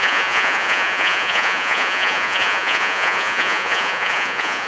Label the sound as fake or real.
fake